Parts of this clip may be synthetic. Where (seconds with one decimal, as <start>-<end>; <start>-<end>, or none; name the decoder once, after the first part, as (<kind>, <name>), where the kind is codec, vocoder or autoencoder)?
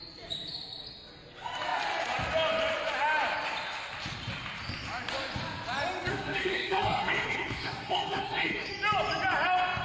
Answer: 6.1-8.7 (codec, SNAC)